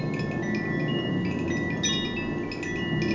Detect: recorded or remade recorded